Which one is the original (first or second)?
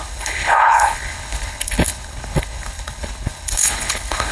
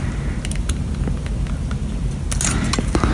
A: second